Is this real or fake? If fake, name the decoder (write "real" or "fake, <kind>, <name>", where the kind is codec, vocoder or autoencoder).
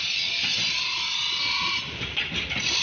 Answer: fake, vocoder, BigVGAN v2